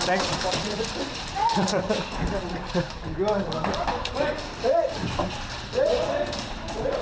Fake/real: fake